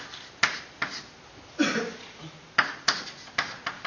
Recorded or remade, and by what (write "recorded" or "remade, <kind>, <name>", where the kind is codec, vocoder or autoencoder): recorded